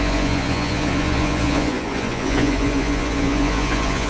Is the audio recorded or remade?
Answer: remade